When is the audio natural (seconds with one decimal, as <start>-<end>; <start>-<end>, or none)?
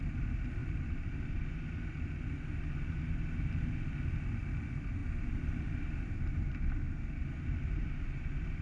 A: 0.0-8.6